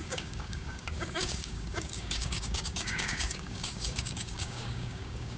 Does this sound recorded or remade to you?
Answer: remade